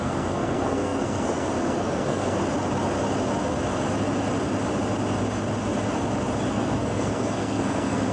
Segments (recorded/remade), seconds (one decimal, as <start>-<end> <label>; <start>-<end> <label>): 0.0-2.4 remade; 2.4-6.5 recorded; 6.5-8.1 remade